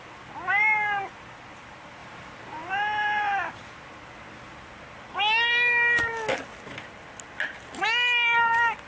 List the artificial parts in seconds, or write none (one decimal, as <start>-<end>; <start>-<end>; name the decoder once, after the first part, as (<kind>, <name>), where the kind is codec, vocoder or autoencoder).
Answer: none